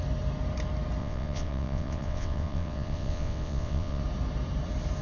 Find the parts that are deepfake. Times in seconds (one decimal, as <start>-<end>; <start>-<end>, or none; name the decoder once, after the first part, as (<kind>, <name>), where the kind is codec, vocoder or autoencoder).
1.0-4.0 (vocoder, WaveNeXt)